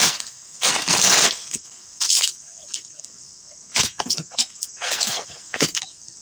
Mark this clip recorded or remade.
remade